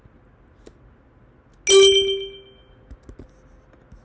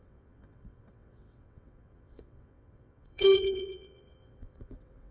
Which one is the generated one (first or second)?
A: second